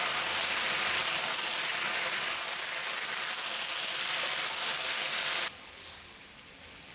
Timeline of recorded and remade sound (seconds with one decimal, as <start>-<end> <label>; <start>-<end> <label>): 0.0-6.9 recorded